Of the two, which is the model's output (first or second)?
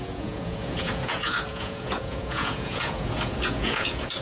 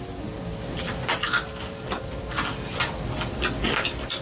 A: first